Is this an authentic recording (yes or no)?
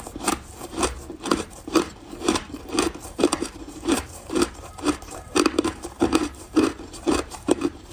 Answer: no